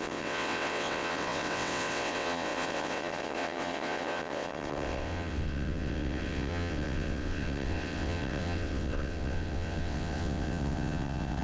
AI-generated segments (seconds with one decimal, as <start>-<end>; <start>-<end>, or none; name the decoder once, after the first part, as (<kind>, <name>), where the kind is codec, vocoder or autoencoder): 0.0-11.4 (vocoder, WaveNeXt)